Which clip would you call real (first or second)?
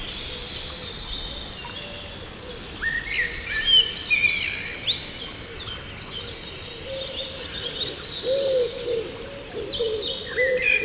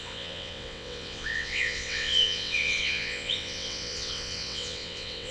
first